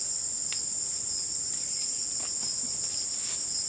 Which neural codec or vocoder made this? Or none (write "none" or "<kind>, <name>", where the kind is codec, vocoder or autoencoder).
none